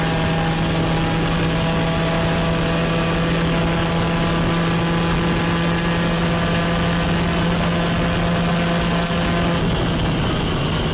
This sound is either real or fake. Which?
real